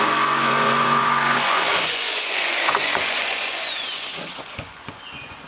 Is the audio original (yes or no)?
no